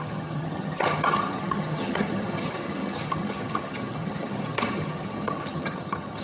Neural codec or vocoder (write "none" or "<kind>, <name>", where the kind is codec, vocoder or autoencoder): vocoder, HiFi-GAN